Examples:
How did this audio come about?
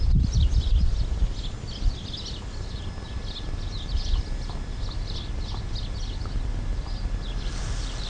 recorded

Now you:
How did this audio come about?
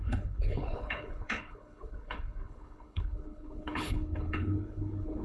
remade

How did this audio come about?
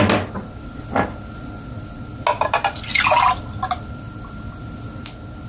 recorded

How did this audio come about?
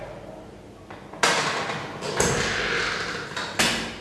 recorded